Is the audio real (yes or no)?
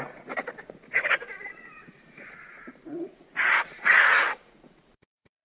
no